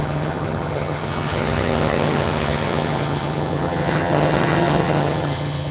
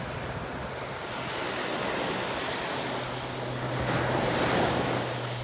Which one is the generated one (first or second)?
first